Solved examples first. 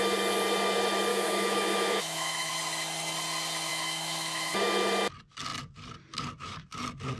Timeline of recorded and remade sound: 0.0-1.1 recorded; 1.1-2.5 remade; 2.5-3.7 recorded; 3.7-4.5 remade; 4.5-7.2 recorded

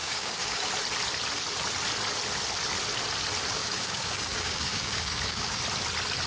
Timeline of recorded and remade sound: 0.0-0.7 remade; 0.7-3.6 recorded; 3.6-5.6 remade; 5.6-6.3 recorded

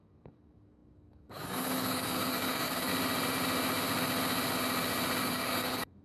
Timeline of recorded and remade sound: 0.0-2.9 remade; 2.9-5.2 recorded; 5.2-6.0 remade